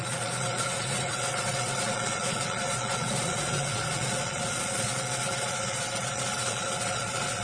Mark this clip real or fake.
fake